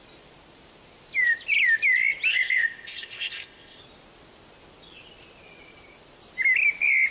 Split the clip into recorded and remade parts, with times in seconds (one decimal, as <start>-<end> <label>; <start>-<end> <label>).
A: 0.0-2.3 recorded; 2.3-3.8 remade; 3.8-7.1 recorded